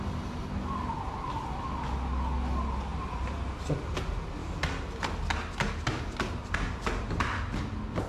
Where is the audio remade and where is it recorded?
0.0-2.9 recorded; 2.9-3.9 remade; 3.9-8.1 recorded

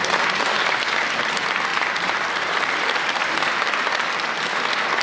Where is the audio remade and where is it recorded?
0.0-1.7 recorded; 1.7-4.2 remade; 4.2-5.0 recorded

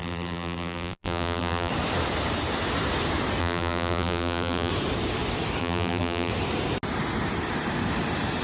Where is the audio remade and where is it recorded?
0.0-1.7 remade; 1.7-3.4 recorded; 3.4-4.7 remade; 4.7-5.6 recorded; 5.6-6.3 remade; 6.3-8.4 recorded

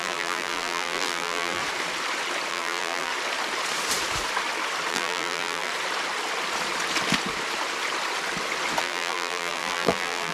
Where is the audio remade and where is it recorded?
0.0-1.6 remade; 1.6-2.5 recorded; 2.5-3.1 remade; 3.1-4.9 recorded; 4.9-5.7 remade; 5.7-8.8 recorded; 8.8-10.3 remade

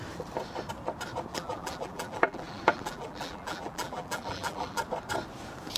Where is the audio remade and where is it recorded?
0.0-1.3 recorded; 1.3-4.8 remade; 4.8-5.8 recorded

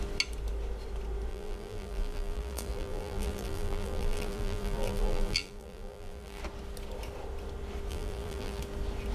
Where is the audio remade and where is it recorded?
0.0-1.3 recorded; 1.3-6.4 remade; 6.4-7.9 recorded; 7.9-8.6 remade; 8.6-9.1 recorded